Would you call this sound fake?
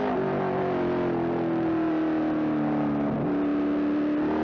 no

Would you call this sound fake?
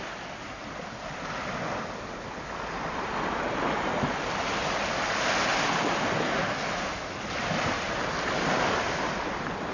no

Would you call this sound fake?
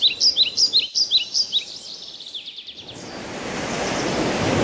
no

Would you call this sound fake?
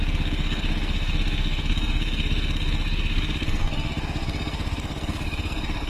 yes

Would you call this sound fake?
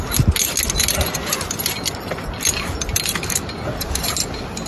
no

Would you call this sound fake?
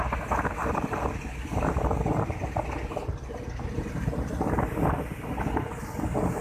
no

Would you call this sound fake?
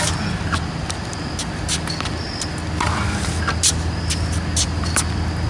no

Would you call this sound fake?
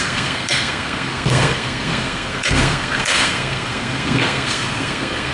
yes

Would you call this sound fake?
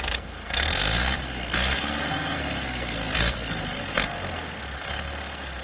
yes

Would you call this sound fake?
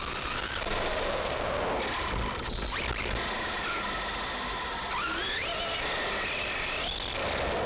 no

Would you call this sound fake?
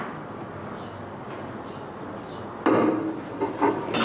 no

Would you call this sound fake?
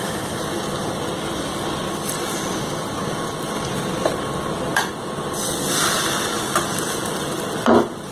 no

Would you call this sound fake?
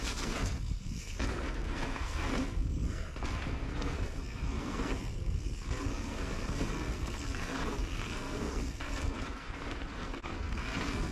yes